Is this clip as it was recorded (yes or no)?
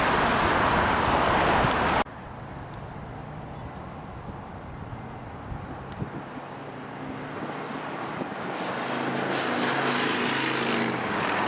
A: yes